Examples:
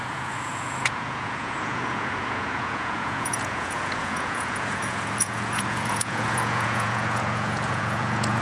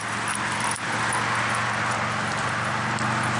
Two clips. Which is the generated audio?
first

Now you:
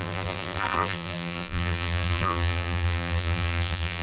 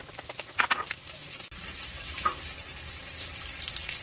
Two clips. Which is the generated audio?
first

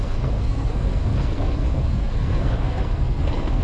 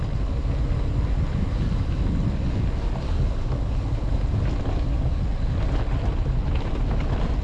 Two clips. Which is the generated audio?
first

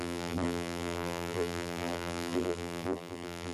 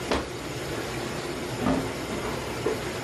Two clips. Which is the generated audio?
first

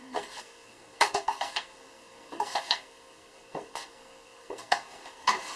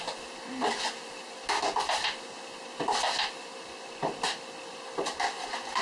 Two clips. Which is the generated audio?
first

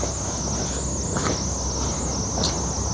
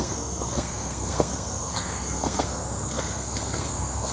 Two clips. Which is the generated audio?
second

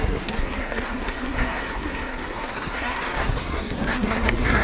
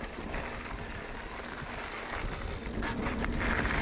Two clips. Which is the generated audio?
first